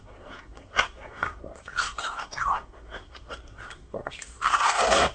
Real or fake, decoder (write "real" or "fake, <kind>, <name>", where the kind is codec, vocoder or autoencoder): fake, codec, SNAC